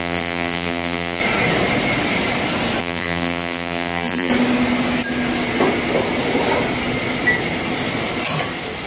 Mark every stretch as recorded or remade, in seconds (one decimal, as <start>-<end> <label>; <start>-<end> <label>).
0.0-1.2 remade; 1.2-2.8 recorded; 2.8-4.3 remade; 4.3-8.9 recorded